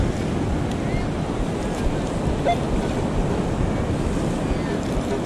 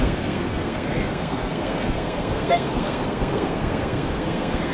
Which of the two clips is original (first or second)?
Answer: first